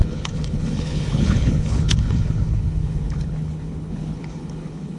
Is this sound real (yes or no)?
no